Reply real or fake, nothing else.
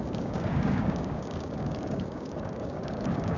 fake